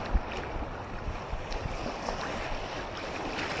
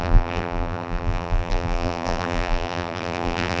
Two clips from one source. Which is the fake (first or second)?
second